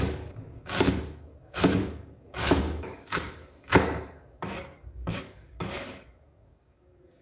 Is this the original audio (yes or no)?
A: no